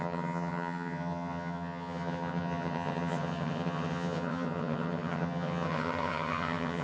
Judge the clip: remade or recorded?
remade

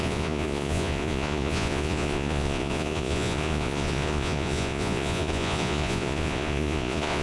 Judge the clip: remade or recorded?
remade